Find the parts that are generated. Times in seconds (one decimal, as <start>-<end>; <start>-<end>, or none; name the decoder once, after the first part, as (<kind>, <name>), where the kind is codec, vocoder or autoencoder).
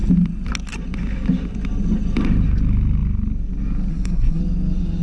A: 3.9-4.4 (codec, SNAC)